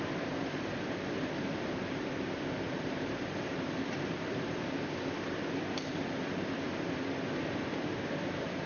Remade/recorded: remade